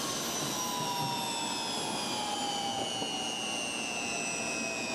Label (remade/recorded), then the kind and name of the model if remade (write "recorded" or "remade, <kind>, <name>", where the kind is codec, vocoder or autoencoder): recorded